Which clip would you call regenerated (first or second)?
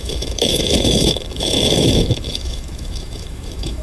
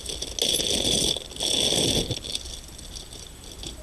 first